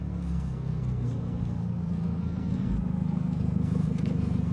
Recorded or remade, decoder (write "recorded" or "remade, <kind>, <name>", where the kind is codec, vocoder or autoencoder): remade, codec, SNAC